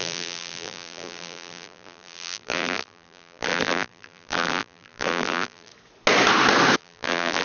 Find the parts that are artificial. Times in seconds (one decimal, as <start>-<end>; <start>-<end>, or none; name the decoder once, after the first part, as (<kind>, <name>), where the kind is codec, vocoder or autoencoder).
0.0-5.7 (vocoder, BigVGAN v2); 6.8-7.4